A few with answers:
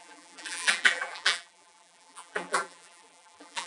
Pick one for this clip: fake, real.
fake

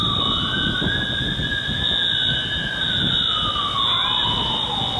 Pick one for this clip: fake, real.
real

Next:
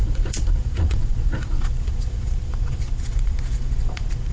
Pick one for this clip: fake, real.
fake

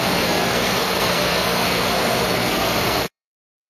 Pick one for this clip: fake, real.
fake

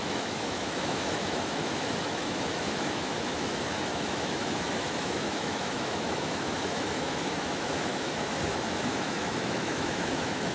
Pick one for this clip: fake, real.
fake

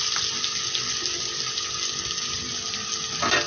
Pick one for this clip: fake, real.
real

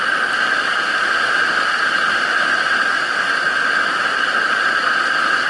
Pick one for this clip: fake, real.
real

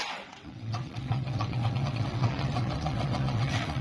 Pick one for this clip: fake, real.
fake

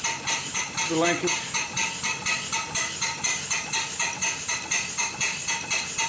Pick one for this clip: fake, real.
real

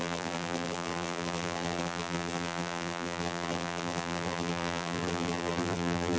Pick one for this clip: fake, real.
fake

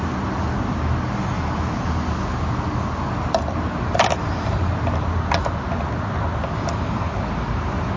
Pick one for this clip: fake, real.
real